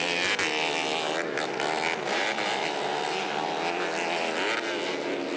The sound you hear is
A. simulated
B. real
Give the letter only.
B